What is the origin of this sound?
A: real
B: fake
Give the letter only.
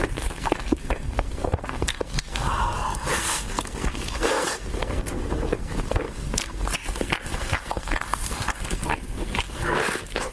B